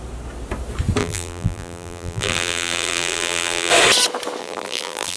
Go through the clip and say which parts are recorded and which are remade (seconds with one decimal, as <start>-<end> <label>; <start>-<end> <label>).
0.0-1.0 recorded; 1.0-3.7 remade; 3.7-4.4 recorded; 4.4-5.2 remade